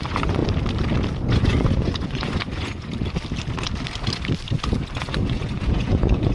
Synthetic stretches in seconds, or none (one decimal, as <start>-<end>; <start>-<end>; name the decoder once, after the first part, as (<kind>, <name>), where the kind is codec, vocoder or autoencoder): 0.0-0.4 (vocoder, Vocos); 1.3-2.9; 5.0-6.3